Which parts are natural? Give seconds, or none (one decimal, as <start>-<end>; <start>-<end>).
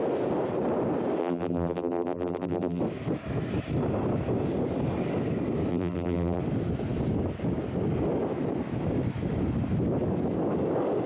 0.0-1.2; 2.8-5.7; 6.4-11.1